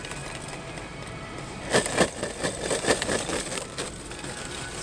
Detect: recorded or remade recorded